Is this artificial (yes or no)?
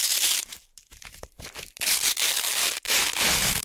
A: yes